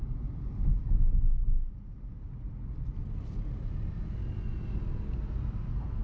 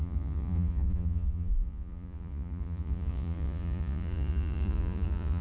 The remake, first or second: second